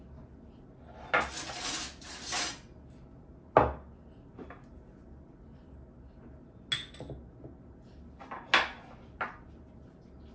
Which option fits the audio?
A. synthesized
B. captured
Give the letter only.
B